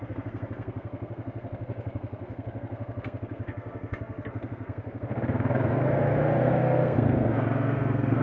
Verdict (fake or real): fake